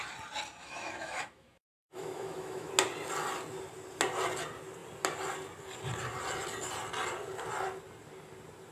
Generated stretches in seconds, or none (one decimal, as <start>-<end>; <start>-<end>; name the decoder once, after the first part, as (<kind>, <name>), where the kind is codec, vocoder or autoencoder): 0.6-2.7 (autoencoder, DAC-VAE)